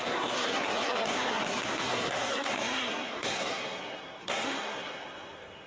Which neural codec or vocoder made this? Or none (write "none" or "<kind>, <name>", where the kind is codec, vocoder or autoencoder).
codec, SNAC